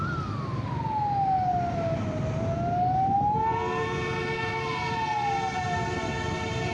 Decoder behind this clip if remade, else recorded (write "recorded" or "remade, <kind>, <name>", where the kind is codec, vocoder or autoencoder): recorded